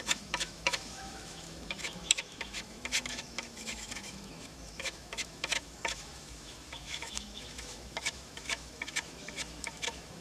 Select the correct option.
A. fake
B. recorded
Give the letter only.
A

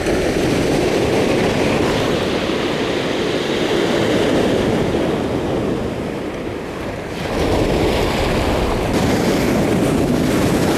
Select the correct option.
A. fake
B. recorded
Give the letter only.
B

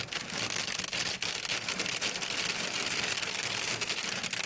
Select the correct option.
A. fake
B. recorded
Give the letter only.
B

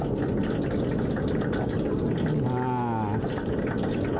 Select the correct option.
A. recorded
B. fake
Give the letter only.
A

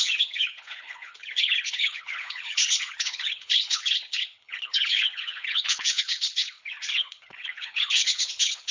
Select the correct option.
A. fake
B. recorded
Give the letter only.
A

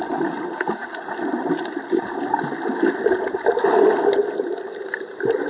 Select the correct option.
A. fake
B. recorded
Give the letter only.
B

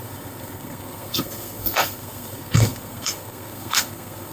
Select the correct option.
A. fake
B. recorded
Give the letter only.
A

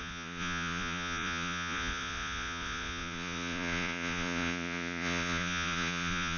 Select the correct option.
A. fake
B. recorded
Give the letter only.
A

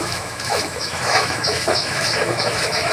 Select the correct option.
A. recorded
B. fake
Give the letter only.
B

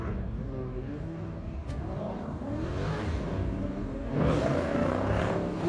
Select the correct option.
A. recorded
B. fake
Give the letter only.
B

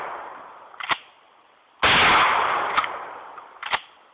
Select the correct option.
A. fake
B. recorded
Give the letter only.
B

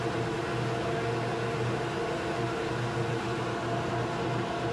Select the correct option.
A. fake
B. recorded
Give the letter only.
B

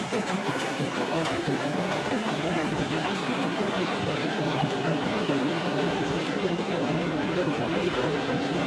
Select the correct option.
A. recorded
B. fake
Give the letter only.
B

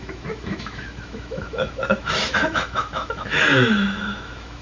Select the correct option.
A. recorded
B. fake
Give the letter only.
B